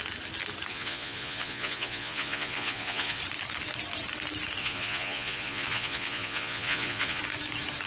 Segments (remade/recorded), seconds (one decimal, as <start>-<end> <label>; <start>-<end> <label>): 0.0-0.7 recorded; 0.7-3.2 remade; 3.2-4.6 recorded; 4.6-7.2 remade; 7.2-7.9 recorded